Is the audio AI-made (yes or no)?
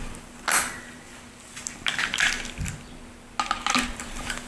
no